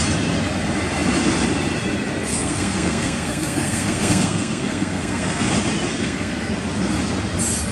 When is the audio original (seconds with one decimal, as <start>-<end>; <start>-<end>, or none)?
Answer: 0.0-2.3; 5.5-5.9; 6.5-7.7